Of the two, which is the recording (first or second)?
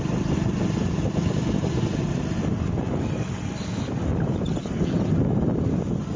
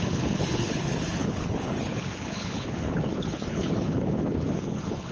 first